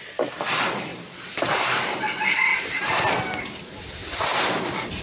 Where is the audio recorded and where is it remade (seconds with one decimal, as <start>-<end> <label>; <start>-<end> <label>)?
0.0-0.9 recorded; 0.9-1.5 remade; 1.5-2.5 recorded; 2.5-3.1 remade; 3.1-4.0 recorded; 4.0-4.6 remade; 4.6-5.0 recorded